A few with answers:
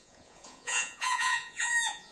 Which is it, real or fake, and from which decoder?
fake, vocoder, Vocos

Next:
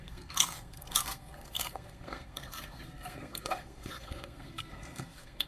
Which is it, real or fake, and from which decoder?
fake, codec, SNAC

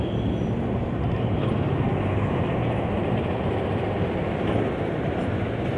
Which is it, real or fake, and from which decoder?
real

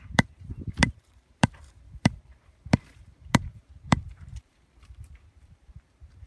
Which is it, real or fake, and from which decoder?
fake, vocoder, BigVGAN v2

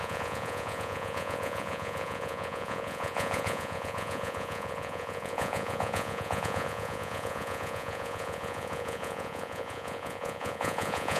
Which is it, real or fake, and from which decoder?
fake, vocoder, Vocos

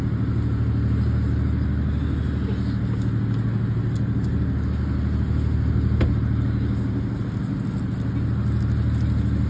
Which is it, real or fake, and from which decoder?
real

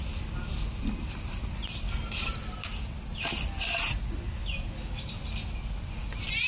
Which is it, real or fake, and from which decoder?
real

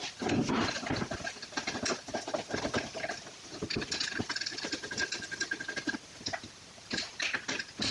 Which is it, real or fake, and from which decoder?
real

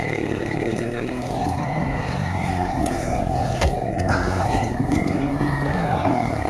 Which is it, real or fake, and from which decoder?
fake, codec, SNAC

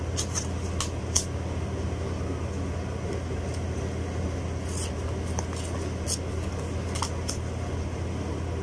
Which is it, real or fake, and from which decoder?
real